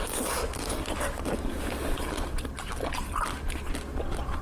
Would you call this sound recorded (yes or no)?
no